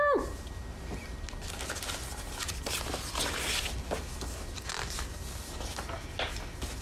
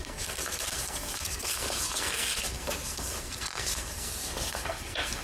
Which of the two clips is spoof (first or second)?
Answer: second